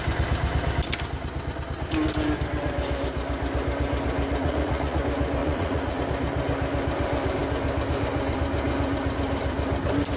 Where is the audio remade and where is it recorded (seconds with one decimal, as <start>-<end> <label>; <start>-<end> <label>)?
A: 0.0-4.4 recorded; 4.4-5.0 remade; 5.0-5.4 recorded; 5.4-6.0 remade; 6.0-10.2 recorded